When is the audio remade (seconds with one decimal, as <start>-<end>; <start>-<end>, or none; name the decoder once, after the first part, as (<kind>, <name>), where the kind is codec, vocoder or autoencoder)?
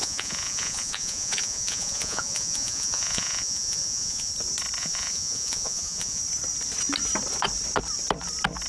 0.0-4.3 (vocoder, Vocos); 4.8-6.2